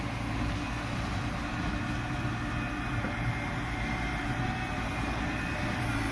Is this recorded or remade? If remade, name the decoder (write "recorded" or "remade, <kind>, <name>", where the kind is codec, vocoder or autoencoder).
recorded